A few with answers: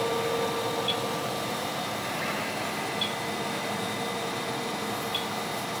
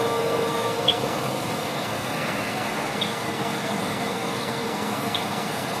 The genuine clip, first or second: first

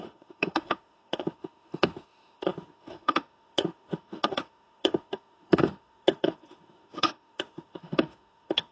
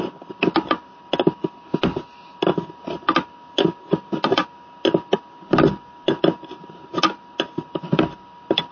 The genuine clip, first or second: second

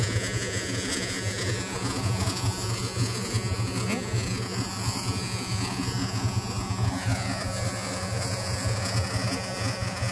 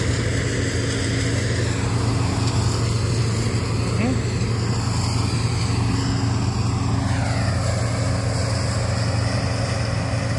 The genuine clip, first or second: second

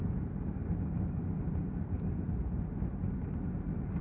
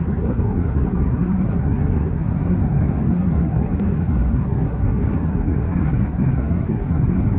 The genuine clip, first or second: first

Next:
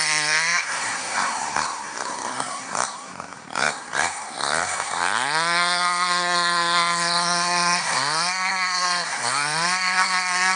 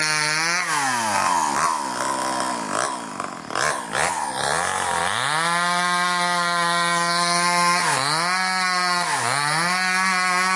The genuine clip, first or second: second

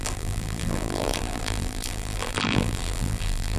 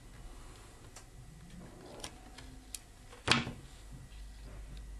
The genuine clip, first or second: second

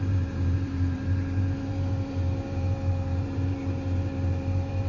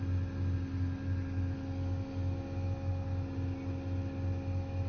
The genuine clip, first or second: second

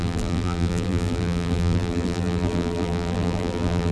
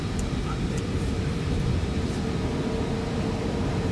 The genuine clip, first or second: second